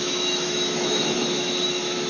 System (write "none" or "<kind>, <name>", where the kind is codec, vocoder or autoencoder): autoencoder, DAC-VAE